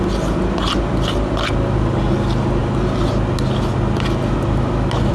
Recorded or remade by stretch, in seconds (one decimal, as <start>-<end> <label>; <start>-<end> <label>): 0.0-5.1 recorded